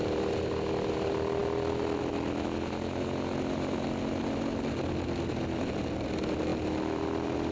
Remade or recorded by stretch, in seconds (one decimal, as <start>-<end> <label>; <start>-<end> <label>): 0.0-7.5 recorded